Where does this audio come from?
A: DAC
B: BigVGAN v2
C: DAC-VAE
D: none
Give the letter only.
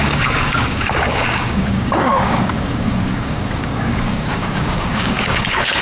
A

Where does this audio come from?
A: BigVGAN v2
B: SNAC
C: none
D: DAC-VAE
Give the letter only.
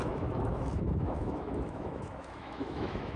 D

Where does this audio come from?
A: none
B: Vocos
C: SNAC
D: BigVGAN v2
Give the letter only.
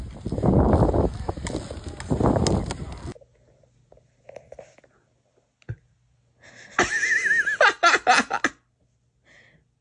A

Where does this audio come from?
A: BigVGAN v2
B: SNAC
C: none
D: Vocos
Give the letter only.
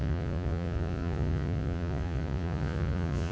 D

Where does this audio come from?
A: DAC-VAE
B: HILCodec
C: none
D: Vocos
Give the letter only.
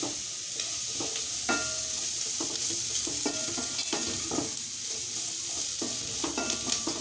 C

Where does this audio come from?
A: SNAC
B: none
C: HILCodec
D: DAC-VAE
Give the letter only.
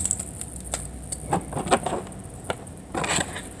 B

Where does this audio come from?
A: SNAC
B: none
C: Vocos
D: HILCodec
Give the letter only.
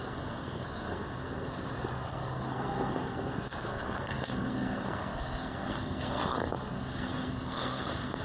A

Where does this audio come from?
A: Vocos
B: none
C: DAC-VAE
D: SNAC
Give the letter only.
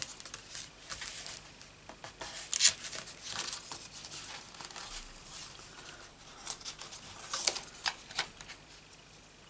B